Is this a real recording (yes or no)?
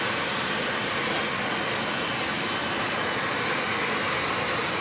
yes